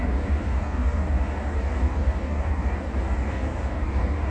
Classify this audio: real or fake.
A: fake